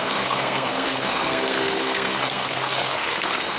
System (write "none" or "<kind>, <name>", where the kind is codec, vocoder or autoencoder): codec, SNAC